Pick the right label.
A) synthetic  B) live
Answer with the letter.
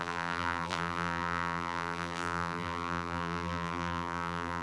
A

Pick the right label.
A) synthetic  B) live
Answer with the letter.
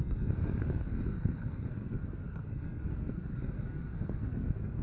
A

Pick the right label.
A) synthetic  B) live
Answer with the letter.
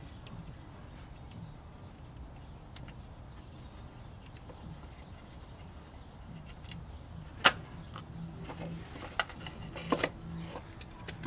B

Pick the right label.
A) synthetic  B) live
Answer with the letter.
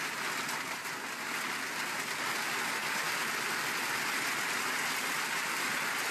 B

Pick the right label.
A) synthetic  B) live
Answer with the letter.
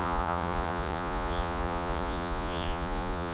A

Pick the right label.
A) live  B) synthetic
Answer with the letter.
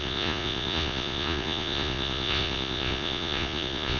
B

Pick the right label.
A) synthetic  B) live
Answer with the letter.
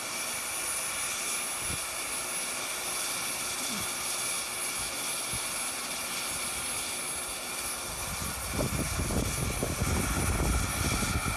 B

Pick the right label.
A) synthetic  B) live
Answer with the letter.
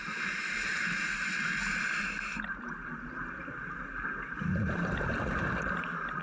B